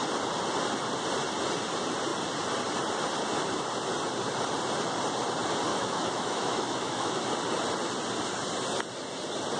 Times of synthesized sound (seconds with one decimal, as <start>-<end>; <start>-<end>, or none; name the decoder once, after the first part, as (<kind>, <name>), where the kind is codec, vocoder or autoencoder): 5.7-7.2 (autoencoder, DAC-VAE)